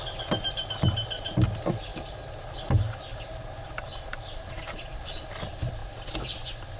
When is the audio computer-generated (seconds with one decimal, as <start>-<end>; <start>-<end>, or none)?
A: 1.9-2.5; 3.1-5.2